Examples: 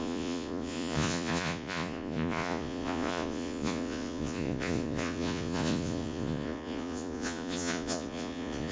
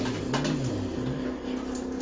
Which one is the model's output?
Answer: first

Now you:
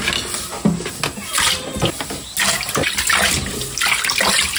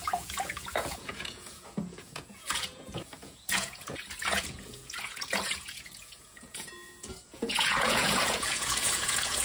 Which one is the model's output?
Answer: second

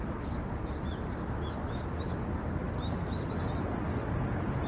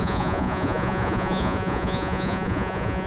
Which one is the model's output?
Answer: second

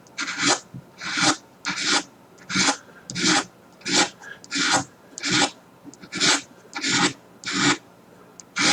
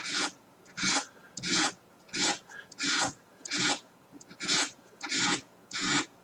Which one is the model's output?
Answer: second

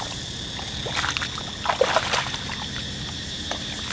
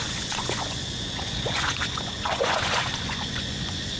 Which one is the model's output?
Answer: second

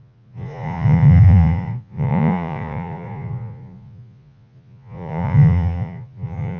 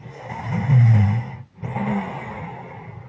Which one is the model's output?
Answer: first